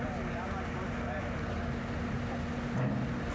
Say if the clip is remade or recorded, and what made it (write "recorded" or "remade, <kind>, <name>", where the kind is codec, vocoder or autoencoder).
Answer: recorded